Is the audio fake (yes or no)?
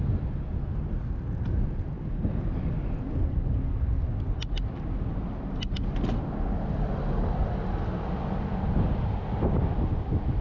no